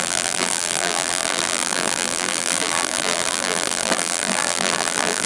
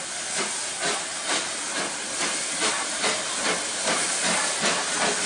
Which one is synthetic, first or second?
first